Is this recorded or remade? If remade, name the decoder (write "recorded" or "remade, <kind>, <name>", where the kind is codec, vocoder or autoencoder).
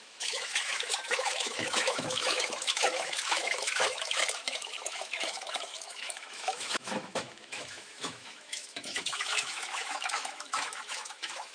remade, autoencoder, DAC-VAE